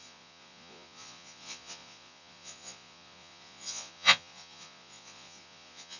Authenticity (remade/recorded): remade